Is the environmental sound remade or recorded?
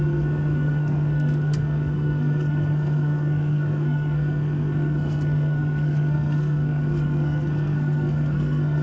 remade